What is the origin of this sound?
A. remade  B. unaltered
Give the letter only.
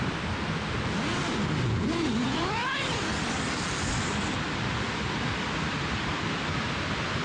B